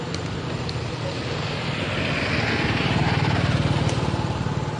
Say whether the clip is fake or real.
real